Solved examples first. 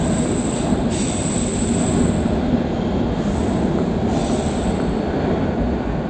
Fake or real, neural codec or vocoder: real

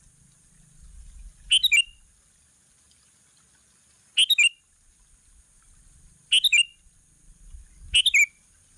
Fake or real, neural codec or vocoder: real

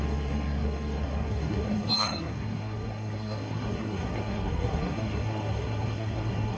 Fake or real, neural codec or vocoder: fake, codec, SNAC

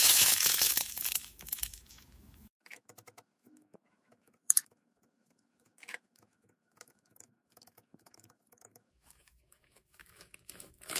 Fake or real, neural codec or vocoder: fake, autoencoder, DAC-VAE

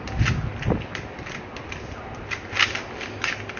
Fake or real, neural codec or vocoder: real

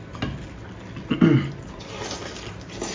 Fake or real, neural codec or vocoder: real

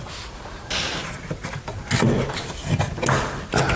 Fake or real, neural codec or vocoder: real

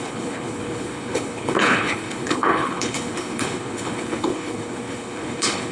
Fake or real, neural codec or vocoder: fake, codec, HILCodec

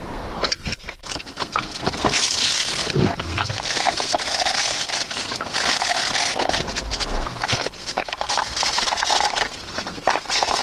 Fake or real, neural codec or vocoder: fake, codec, SNAC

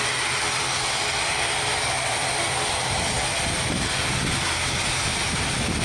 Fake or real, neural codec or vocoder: real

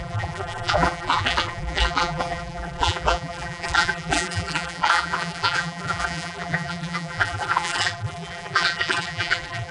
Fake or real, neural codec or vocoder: fake, vocoder, BigVGAN v2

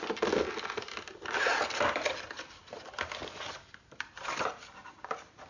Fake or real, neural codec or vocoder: real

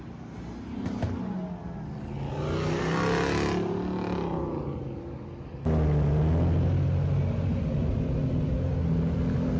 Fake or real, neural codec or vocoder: real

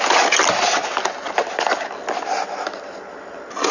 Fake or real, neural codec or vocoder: real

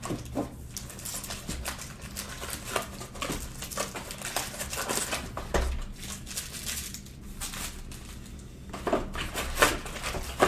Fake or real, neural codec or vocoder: real